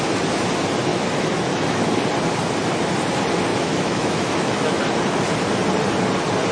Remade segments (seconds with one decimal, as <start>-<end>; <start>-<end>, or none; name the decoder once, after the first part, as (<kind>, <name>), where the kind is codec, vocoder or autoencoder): 0.9-1.8 (autoencoder, DAC-VAE); 3.5-4.8